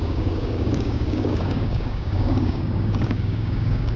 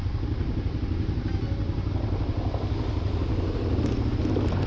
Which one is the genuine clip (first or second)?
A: second